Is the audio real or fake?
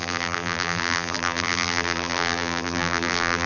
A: fake